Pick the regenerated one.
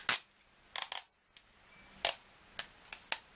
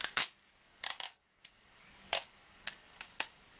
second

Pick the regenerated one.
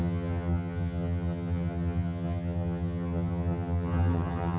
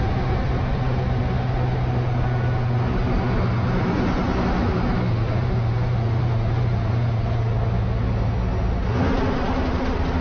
first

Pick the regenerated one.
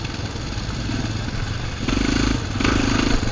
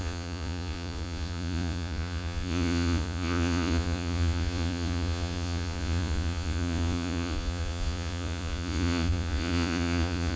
second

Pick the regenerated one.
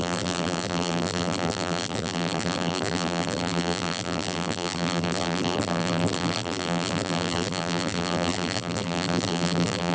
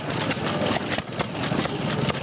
first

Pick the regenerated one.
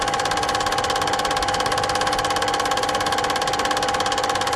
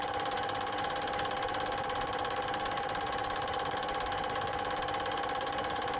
second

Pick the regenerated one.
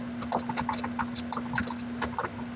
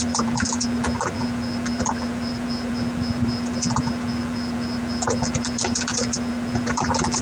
second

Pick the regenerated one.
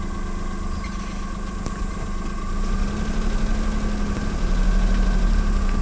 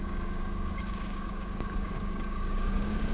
second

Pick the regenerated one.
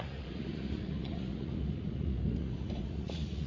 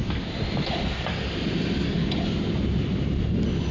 first